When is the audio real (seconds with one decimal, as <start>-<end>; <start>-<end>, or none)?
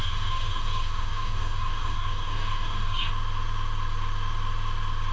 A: 3.1-5.1